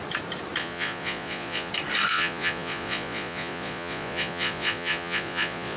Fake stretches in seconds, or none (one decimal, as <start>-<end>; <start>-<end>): 0.6-1.7; 2.1-5.8